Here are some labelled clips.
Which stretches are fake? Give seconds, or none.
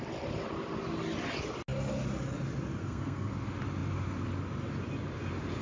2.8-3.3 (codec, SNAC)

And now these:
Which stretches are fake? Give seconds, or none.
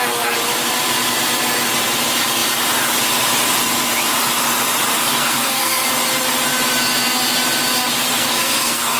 5.0-5.9 (codec, SNAC); 8.0-9.0